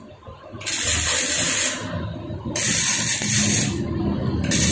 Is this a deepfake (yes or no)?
no